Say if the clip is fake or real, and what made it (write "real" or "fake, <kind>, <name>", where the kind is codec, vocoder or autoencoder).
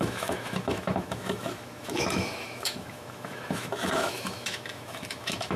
fake, autoencoder, DAC-VAE